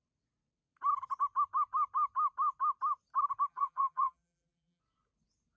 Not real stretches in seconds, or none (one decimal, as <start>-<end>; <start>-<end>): 3.5-4.8